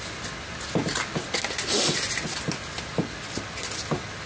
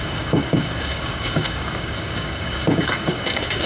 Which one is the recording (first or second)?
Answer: first